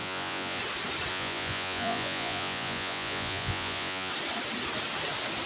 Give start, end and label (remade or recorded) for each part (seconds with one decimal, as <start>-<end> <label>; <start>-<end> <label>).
0.0-0.6 remade; 0.6-1.1 recorded; 1.1-4.1 remade; 4.1-5.5 recorded